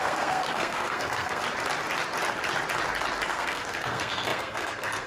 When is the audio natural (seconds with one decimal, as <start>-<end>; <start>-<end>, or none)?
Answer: 1.4-3.3